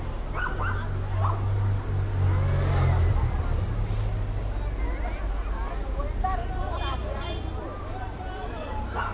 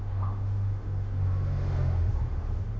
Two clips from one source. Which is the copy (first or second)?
second